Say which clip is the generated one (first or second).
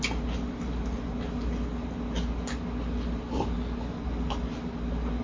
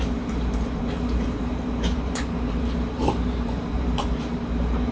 second